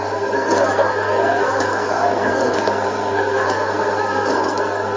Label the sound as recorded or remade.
remade